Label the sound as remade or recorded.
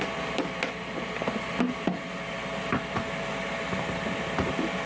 recorded